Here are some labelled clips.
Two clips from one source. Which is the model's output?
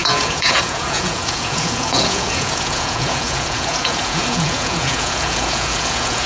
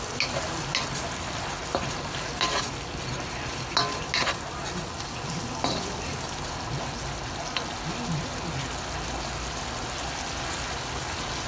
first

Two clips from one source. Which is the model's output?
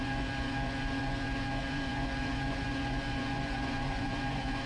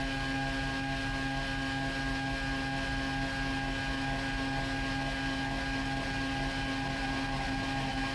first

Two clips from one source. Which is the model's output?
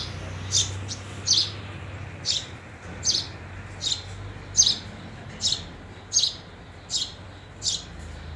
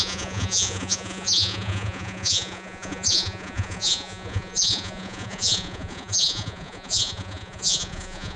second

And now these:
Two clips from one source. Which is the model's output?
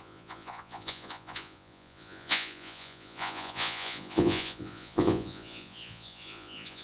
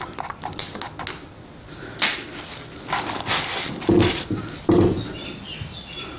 first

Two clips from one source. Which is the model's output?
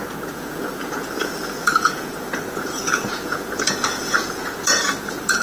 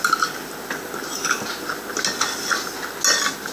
first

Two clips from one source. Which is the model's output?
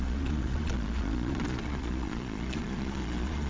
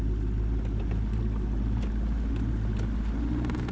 first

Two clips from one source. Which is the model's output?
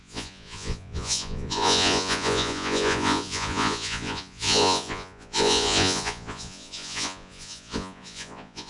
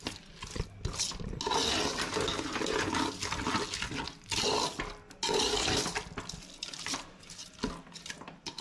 first